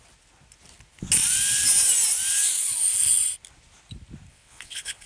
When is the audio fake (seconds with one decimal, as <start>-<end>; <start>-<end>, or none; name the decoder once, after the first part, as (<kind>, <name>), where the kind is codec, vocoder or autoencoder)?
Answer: 4.3-5.1 (vocoder, WaveNeXt)